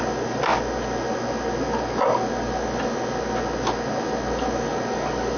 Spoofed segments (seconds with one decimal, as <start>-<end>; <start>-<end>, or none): none

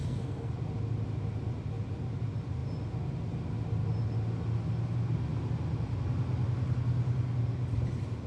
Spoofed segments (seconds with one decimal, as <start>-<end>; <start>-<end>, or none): 0.0-0.5

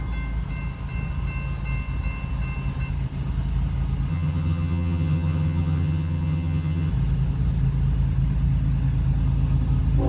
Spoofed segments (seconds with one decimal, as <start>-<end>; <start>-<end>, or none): 4.1-6.9

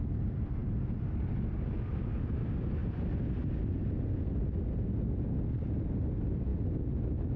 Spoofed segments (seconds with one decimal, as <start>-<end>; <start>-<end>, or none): none

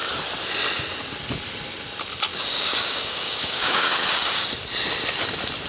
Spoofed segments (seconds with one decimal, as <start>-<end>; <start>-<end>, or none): 2.3-4.5

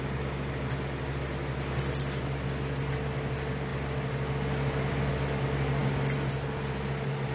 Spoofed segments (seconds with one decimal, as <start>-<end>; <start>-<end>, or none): none

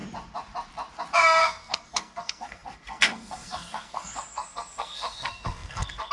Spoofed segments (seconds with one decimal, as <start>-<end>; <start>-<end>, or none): 1.4-6.1

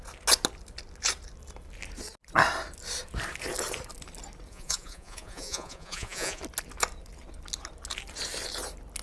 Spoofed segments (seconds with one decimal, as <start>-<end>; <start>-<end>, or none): 4.5-6.4